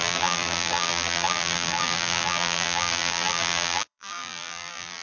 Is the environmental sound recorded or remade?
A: remade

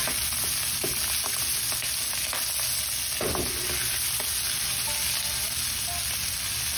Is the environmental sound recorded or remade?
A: recorded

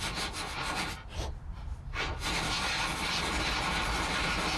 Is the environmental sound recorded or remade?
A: recorded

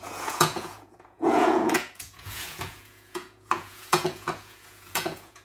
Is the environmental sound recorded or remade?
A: remade